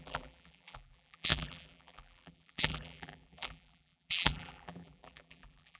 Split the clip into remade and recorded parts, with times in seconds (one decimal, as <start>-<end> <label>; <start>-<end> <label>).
0.0-5.8 remade